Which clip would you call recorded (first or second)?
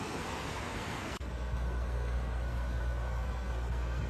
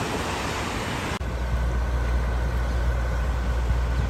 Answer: second